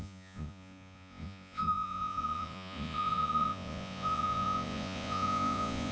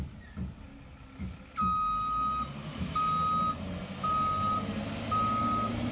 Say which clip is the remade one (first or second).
first